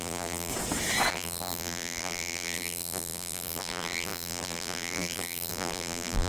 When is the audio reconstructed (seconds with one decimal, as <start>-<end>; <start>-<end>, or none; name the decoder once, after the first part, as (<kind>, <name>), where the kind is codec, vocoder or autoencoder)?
0.0-0.5 (vocoder, BigVGAN v2); 1.1-6.3